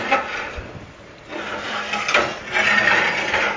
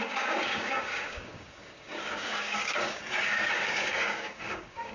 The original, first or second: first